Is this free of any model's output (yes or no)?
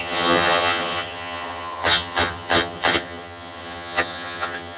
no